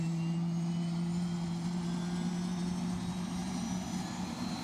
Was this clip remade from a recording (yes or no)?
no